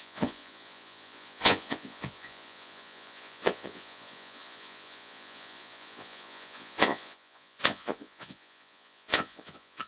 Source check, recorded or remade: remade